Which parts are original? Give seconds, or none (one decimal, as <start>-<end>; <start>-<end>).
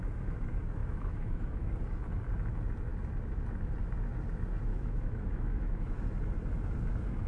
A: 0.0-0.8; 1.7-4.7; 6.0-7.3